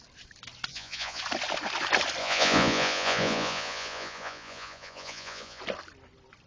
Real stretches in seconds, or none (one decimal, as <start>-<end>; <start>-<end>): 0.0-0.7; 1.2-2.2; 5.6-6.5